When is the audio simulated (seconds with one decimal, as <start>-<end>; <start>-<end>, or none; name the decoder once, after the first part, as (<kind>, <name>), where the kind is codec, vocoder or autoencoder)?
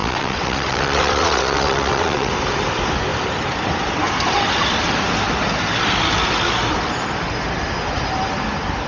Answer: 0.0-2.3 (vocoder, WaveNeXt)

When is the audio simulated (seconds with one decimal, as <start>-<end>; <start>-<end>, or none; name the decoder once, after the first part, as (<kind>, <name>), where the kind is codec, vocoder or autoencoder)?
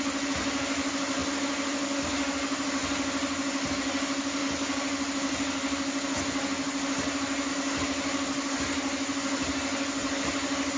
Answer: none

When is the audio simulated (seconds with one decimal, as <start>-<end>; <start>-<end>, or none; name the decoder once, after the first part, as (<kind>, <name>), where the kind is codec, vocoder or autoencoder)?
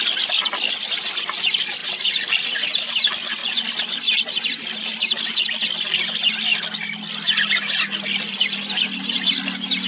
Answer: none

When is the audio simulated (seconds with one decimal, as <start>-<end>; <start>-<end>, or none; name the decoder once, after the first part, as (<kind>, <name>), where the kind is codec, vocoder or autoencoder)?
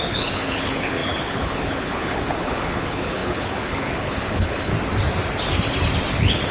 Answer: 0.0-4.7 (codec, HILCodec); 6.1-6.5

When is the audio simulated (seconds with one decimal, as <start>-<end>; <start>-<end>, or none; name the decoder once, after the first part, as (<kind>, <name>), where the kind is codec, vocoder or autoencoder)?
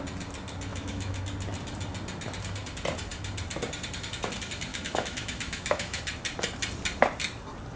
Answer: 0.7-1.2 (autoencoder, DAC-VAE); 4.7-6.0